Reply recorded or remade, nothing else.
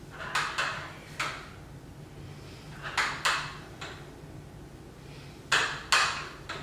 recorded